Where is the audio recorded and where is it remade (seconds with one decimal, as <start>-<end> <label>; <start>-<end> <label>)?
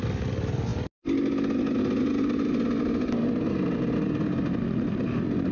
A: 0.0-5.5 recorded